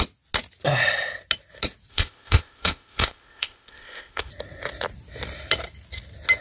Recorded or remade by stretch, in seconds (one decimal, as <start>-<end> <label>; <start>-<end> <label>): 0.0-1.9 recorded; 1.9-4.3 remade; 4.3-6.4 recorded